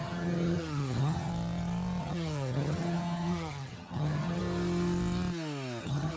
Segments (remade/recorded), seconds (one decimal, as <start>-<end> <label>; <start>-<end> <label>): 0.0-1.3 remade; 1.3-2.0 recorded; 2.0-4.4 remade; 4.4-5.8 recorded; 5.8-6.2 remade

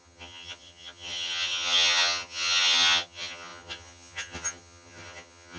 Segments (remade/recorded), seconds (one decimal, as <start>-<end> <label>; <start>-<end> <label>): 0.0-5.6 remade